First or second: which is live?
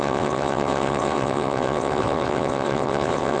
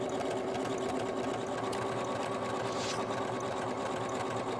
second